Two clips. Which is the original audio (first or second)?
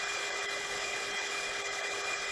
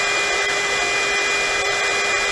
second